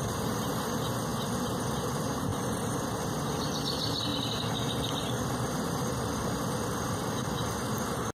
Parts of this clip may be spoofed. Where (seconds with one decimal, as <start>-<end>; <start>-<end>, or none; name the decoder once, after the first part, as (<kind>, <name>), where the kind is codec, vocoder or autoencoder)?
none